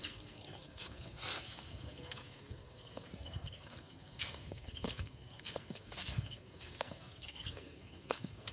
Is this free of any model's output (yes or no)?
no